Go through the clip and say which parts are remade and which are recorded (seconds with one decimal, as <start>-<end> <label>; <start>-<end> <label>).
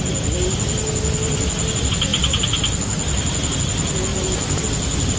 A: 0.0-5.2 recorded